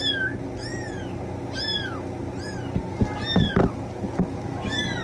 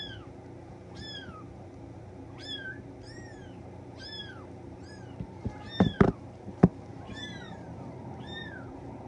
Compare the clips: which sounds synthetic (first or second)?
second